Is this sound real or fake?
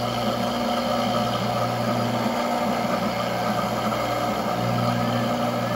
real